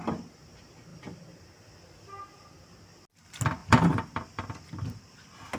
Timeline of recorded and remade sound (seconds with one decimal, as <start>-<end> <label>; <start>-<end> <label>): 0.0-0.9 recorded; 0.9-1.4 remade; 1.4-3.6 recorded; 3.6-5.0 remade; 5.0-5.6 recorded